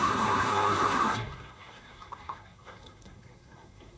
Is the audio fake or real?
fake